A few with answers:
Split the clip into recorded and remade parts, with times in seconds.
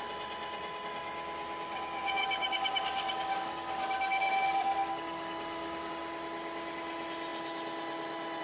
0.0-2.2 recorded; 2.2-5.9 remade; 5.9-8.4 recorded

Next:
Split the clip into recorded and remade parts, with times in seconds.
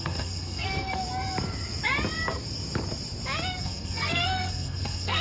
0.0-1.0 remade; 1.0-3.6 recorded; 3.6-5.2 remade